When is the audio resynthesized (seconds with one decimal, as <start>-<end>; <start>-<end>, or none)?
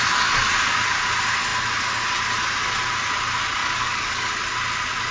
3.6-4.3